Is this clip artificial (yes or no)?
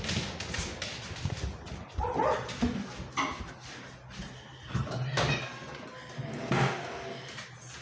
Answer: no